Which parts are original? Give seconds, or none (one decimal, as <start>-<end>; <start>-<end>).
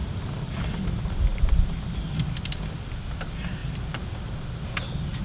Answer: 0.6-1.3; 2.1-5.2